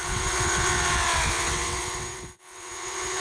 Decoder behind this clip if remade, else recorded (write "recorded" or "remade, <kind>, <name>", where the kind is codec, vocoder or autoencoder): remade, vocoder, WaveNeXt